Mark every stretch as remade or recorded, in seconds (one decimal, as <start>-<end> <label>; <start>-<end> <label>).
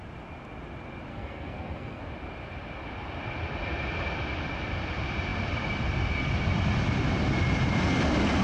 0.0-1.1 recorded; 1.1-2.0 remade; 2.0-8.4 recorded